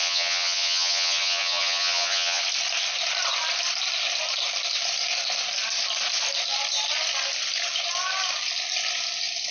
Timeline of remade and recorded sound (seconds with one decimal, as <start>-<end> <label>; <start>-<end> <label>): 0.0-2.4 remade; 2.4-9.5 recorded